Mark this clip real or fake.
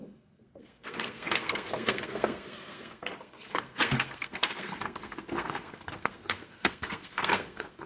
fake